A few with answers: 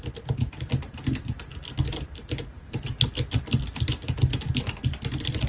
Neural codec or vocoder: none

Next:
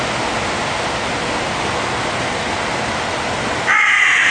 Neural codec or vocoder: none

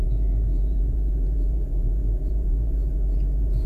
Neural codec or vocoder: vocoder, Vocos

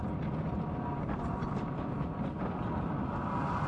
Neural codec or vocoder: none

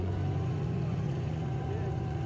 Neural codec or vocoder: vocoder, Vocos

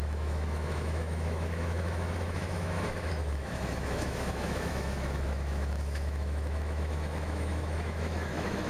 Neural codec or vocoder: autoencoder, DAC-VAE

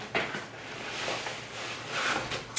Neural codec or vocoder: none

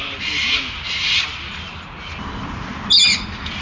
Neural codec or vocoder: none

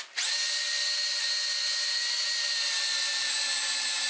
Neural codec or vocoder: none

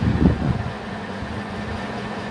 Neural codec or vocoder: vocoder, Vocos